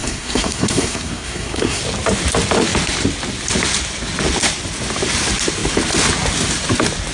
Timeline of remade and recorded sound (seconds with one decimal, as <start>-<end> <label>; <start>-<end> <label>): 0.0-1.8 remade; 1.8-7.1 recorded

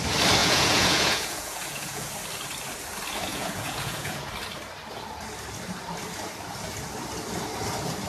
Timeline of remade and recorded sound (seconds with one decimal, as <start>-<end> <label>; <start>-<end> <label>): 0.0-0.4 recorded; 0.4-2.1 remade; 2.1-3.3 recorded; 3.3-4.3 remade; 4.3-8.1 recorded